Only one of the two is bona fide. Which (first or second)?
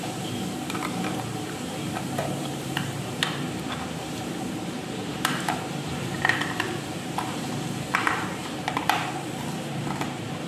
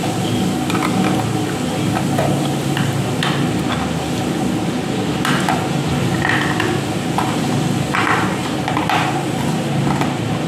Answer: second